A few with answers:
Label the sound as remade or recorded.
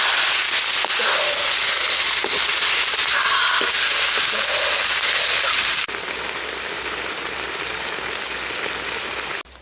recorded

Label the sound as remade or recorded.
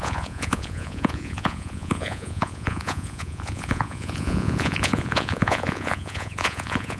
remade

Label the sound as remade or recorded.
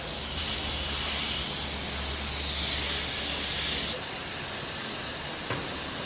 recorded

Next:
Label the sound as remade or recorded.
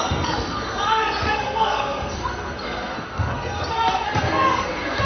remade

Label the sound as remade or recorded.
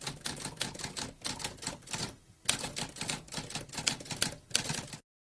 recorded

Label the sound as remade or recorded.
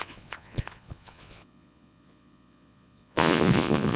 remade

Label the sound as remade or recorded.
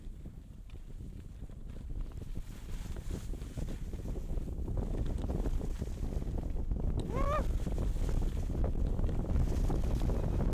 recorded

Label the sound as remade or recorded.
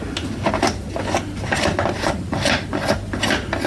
recorded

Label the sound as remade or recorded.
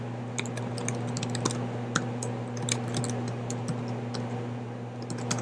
recorded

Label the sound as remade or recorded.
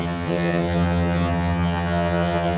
remade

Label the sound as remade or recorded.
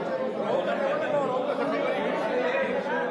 recorded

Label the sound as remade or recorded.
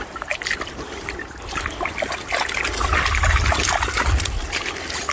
recorded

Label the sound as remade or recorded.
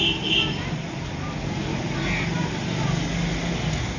recorded